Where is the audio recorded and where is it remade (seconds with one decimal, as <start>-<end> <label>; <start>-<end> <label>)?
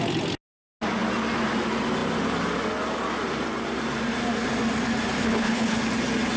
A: 0.0-5.2 recorded; 5.2-5.8 remade; 5.8-6.4 recorded